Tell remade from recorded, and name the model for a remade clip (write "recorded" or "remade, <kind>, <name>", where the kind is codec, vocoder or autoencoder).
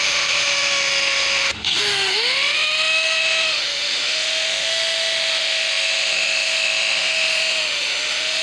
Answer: remade, autoencoder, DAC-VAE